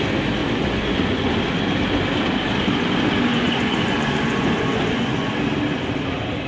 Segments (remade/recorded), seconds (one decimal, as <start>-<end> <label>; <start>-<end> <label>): 0.0-0.4 recorded; 0.4-1.3 remade; 1.3-3.3 recorded; 3.3-5.3 remade; 5.3-6.5 recorded